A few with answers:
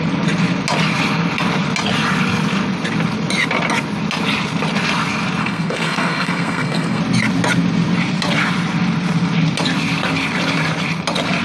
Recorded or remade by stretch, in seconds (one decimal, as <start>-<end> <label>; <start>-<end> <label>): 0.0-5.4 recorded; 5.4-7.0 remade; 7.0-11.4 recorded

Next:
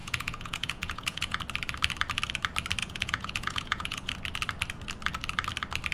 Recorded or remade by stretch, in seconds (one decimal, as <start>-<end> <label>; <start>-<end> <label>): 0.0-1.4 remade; 1.4-2.8 recorded; 2.8-4.1 remade; 4.1-5.9 recorded

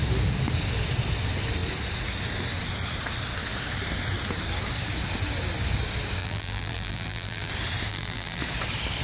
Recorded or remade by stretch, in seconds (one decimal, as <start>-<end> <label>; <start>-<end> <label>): 0.0-6.2 recorded; 6.2-7.5 remade; 7.5-7.9 recorded; 7.9-8.4 remade; 8.4-9.0 recorded